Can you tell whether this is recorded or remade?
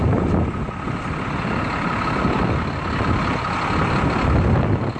recorded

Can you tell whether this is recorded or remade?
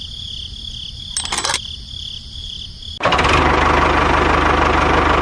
recorded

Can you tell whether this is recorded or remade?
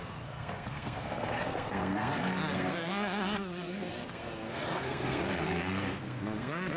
remade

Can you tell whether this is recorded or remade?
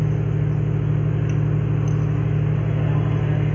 recorded